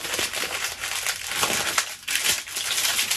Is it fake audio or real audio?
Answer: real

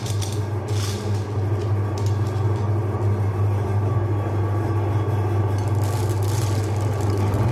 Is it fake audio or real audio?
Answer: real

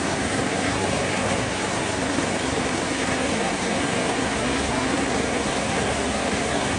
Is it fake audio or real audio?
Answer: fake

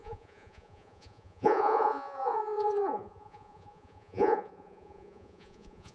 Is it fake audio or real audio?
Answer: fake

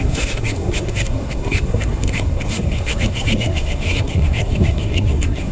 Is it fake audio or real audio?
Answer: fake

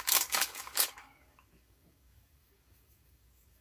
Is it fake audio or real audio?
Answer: fake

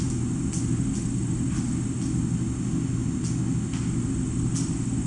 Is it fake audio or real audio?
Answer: real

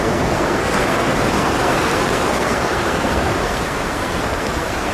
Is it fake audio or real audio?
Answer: fake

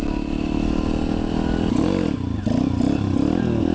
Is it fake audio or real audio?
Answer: real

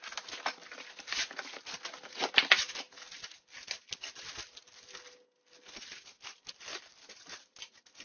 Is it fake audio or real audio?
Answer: real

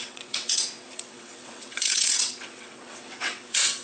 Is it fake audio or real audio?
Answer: fake